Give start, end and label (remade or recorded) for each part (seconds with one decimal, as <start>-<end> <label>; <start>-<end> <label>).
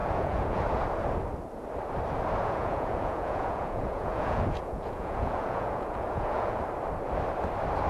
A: 0.0-0.6 remade; 0.6-2.4 recorded; 2.4-6.6 remade; 6.6-7.9 recorded